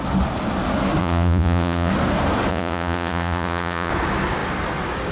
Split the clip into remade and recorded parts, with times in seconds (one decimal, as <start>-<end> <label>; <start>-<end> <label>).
0.0-1.0 recorded; 1.0-1.9 remade; 1.9-2.5 recorded; 2.5-3.9 remade; 3.9-5.1 recorded